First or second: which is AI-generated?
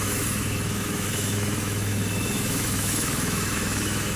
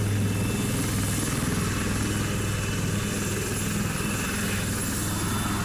first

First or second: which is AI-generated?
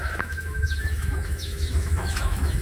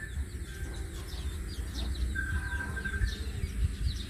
first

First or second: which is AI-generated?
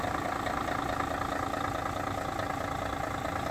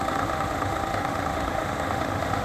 second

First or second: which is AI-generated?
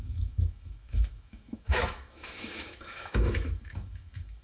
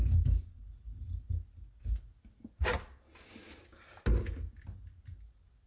first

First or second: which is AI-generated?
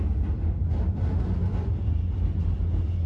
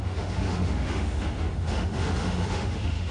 second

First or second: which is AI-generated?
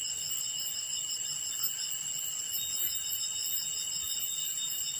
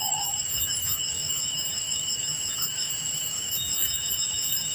second